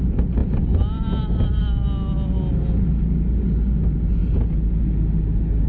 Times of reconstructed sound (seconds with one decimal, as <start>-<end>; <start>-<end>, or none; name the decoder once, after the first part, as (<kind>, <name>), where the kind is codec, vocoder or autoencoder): none